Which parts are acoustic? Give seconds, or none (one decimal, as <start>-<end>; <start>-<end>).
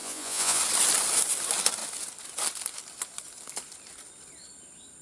0.6-5.0